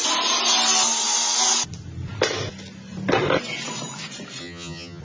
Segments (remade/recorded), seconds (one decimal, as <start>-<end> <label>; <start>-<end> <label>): 0.0-4.4 recorded; 4.4-5.0 remade